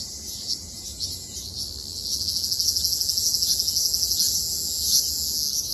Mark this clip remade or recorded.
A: recorded